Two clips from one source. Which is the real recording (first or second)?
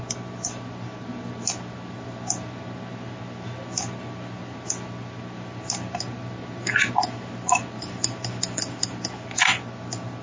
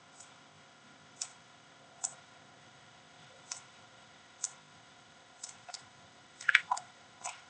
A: first